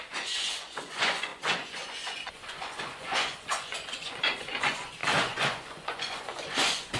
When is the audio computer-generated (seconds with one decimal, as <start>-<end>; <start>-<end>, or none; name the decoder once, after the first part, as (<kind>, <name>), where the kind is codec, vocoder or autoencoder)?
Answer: 0.0-7.0 (vocoder, Vocos)